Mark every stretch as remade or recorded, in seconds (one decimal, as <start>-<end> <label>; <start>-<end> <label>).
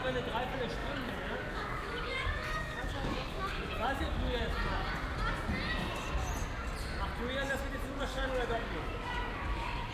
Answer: 0.0-0.8 recorded; 0.8-4.4 remade; 4.4-8.1 recorded; 8.1-9.9 remade